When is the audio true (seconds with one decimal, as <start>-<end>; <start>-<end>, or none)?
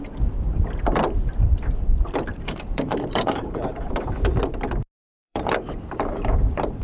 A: 0.0-1.2; 3.9-5.2